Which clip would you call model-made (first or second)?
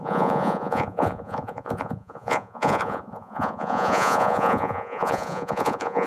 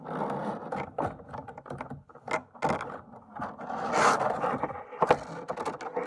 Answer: first